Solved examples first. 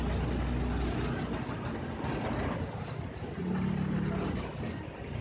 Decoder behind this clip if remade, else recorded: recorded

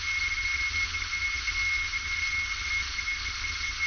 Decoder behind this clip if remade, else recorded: recorded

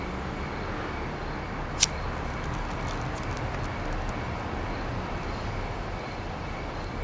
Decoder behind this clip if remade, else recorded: recorded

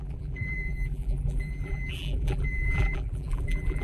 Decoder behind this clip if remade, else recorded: remade, vocoder, BigVGAN v2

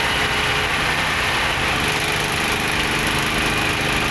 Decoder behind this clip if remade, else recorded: recorded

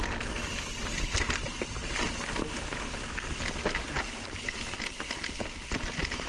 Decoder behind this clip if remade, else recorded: recorded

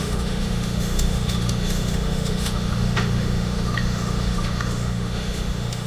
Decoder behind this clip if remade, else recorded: remade, autoencoder, DAC-VAE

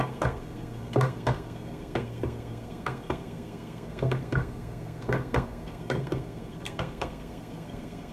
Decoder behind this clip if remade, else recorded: remade, codec, SNAC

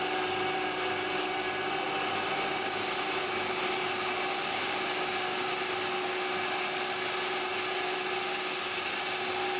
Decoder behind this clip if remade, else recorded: recorded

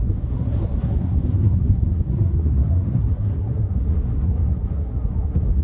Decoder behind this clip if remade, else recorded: remade, codec, SNAC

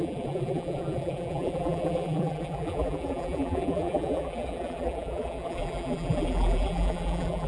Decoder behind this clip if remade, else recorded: remade, vocoder, BigVGAN v2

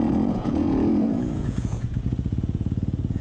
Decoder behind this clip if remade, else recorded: remade, vocoder, Vocos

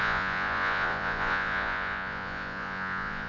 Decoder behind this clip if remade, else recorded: remade, vocoder, Vocos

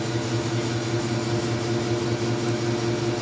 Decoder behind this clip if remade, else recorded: recorded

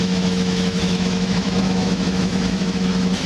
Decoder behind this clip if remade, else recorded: remade, autoencoder, DAC-VAE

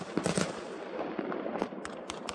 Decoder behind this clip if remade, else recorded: remade, vocoder, BigVGAN v2